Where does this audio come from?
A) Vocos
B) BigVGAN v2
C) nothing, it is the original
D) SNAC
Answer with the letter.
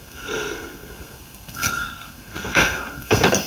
D